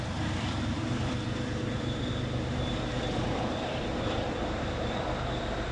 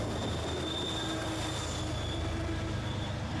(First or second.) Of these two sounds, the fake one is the first